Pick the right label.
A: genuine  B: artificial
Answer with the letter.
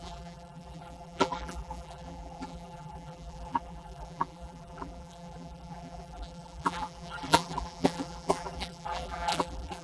B